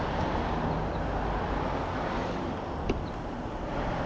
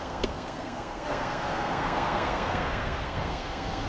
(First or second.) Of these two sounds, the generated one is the second